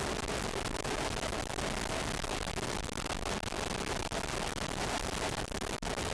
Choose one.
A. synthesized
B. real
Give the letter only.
B